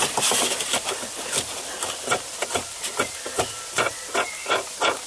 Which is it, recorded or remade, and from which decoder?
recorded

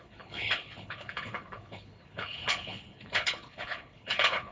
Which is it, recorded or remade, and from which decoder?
remade, codec, HILCodec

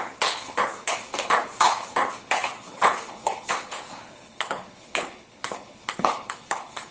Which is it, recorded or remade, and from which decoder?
remade, codec, HILCodec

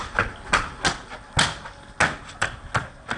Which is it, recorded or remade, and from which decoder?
recorded